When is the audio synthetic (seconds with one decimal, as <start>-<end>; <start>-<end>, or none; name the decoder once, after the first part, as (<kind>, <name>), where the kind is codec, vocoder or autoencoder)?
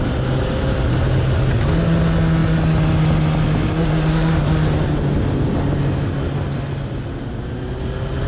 none